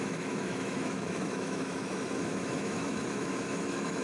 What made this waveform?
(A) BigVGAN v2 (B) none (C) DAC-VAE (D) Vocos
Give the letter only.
C